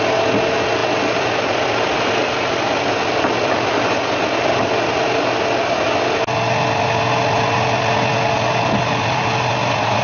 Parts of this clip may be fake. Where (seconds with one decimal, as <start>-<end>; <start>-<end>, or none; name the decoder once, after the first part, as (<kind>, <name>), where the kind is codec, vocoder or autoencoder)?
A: none